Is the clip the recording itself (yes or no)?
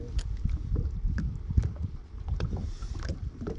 yes